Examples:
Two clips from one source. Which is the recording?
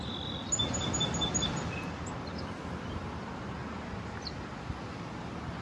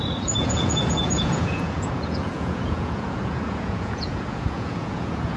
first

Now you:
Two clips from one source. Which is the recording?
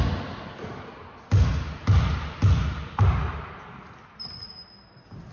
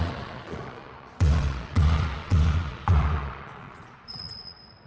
first